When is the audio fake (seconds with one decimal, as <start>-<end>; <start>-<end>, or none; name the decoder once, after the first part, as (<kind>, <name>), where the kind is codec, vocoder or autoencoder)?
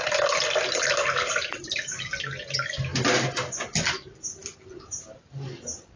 none